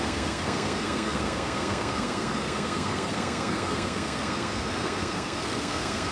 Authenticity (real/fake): fake